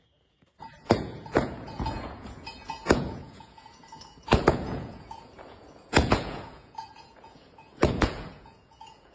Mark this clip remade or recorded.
remade